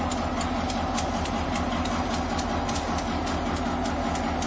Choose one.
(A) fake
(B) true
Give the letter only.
B